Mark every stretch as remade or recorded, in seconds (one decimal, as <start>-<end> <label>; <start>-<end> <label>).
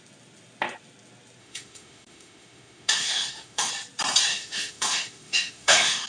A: 0.0-1.4 recorded; 1.4-3.7 remade; 3.7-4.3 recorded; 4.3-6.1 remade